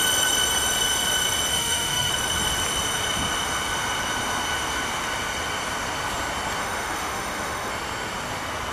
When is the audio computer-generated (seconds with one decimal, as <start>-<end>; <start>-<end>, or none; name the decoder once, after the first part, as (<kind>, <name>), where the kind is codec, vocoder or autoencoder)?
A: 1.5-2.1 (autoencoder, DAC-VAE); 6.6-7.7

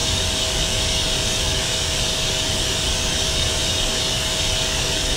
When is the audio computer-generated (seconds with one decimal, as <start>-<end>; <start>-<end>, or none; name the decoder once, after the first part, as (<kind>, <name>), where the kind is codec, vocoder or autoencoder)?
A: 0.0-5.2 (codec, DAC)

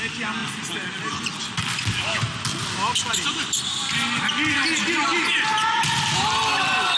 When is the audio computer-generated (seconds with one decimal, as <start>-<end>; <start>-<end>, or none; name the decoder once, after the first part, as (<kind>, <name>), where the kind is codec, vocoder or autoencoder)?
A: none

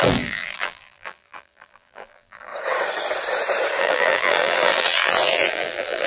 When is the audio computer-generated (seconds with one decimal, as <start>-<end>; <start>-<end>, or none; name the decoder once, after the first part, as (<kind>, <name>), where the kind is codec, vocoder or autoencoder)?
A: 0.0-2.5 (vocoder, BigVGAN v2); 3.8-6.1

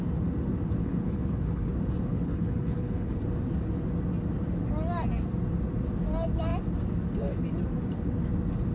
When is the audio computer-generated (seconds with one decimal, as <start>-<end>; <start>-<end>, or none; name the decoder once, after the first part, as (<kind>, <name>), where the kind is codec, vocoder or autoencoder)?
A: 0.8-1.7 (codec, HILCodec); 2.1-3.2

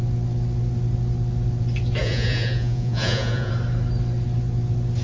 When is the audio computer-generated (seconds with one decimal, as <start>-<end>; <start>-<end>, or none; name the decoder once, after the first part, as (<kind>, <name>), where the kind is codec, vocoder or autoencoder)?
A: 2.0-3.5 (vocoder, Vocos)

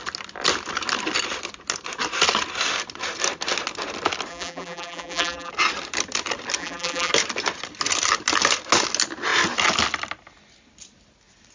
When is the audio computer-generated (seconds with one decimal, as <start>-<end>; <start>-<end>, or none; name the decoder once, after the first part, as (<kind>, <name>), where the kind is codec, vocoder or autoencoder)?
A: 4.3-5.5 (vocoder, BigVGAN v2); 6.6-7.1